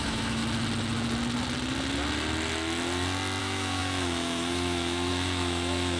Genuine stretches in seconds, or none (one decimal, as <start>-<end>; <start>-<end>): 0.4-3.4

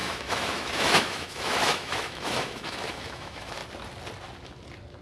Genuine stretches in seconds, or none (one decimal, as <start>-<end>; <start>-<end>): 3.6-5.0

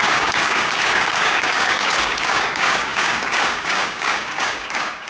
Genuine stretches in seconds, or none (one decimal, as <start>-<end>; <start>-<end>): none